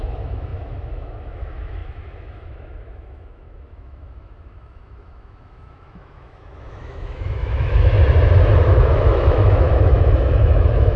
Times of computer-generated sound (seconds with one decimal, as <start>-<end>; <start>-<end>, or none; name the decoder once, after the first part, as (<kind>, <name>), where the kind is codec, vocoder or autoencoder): 0.0-7.9 (autoencoder, DAC-VAE); 8.6-11.0